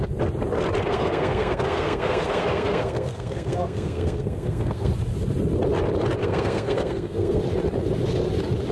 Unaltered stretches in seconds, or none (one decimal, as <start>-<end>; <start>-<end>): 0.0-0.9; 4.9-6.2; 7.4-8.7